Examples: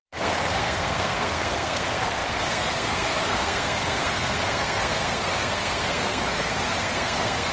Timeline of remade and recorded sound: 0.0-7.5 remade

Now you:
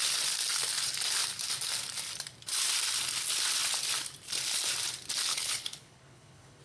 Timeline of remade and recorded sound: 0.0-5.3 recorded; 5.3-6.6 remade

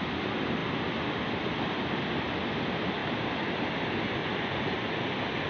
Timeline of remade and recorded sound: 0.0-4.2 recorded; 4.2-4.9 remade; 4.9-5.5 recorded

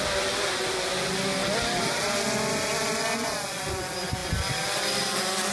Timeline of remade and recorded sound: 0.0-5.5 recorded